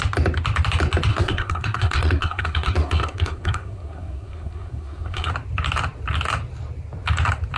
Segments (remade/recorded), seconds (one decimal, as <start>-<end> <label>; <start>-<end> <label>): 0.0-1.1 recorded; 1.1-5.3 remade; 5.3-7.6 recorded